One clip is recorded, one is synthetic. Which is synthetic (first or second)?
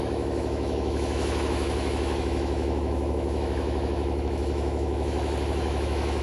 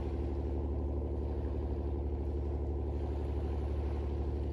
first